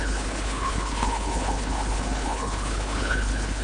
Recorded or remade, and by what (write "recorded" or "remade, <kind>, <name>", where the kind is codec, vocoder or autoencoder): remade, codec, HILCodec